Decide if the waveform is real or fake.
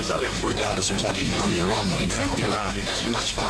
fake